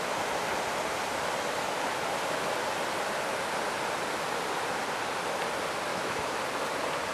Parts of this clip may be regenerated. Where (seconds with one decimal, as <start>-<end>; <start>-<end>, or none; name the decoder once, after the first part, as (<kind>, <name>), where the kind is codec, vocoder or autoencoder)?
5.9-6.4 (autoencoder, DAC-VAE)